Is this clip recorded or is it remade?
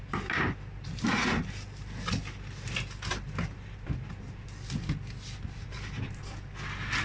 recorded